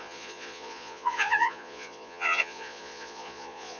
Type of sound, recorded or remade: remade